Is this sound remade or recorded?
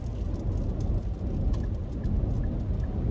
recorded